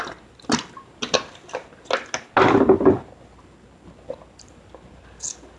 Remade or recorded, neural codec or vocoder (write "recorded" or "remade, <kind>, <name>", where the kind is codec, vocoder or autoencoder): recorded